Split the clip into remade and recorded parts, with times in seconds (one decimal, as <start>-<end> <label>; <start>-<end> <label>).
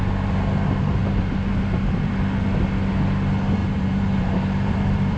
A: 0.0-3.6 recorded; 3.6-5.2 remade